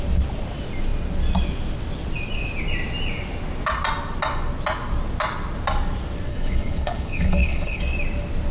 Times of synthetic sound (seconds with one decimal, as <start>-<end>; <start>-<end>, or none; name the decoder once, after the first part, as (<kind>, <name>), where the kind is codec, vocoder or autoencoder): 6.3-7.8 (codec, HILCodec)